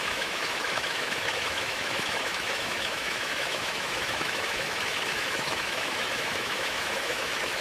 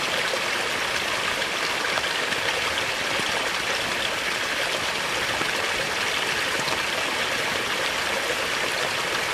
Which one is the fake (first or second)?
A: first